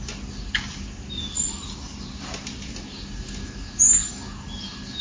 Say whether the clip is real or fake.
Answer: real